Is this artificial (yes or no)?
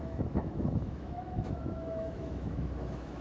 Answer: yes